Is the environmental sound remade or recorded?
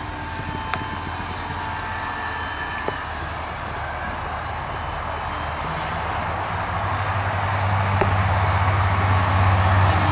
recorded